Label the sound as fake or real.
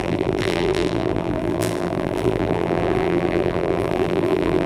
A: fake